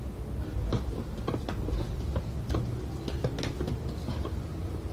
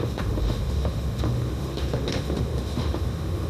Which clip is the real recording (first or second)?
first